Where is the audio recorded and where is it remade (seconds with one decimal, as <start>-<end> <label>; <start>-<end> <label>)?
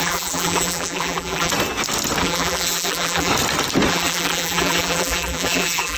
0.0-1.5 remade; 1.5-2.2 recorded; 2.2-3.3 remade; 3.3-3.9 recorded; 3.9-6.0 remade